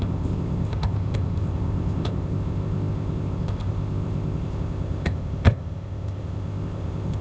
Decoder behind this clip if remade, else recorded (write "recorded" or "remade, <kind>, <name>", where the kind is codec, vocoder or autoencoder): remade, codec, ZipCodec